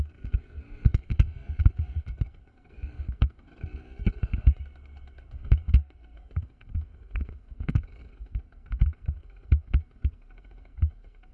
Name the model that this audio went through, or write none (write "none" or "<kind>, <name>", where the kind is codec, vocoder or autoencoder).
codec, SNAC